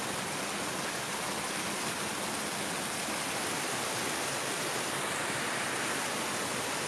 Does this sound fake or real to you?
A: real